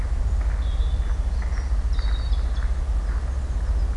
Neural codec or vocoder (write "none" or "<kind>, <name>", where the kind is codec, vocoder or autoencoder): none